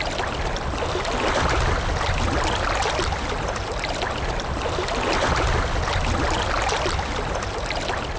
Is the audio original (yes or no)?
yes